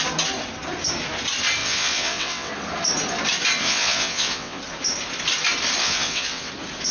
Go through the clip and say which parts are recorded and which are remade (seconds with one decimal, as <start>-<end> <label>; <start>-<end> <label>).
0.0-1.6 recorded; 1.6-2.5 remade; 2.5-3.6 recorded; 3.6-4.6 remade; 4.6-5.8 recorded; 5.8-6.5 remade; 6.5-6.9 recorded